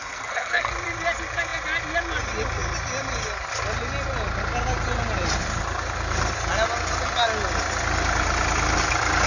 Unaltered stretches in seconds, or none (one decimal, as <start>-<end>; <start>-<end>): 0.7-9.3